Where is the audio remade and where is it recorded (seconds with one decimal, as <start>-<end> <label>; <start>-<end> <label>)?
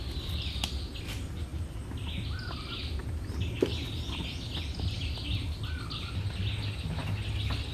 0.0-7.7 recorded